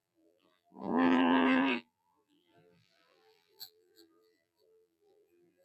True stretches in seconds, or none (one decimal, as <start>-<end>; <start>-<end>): none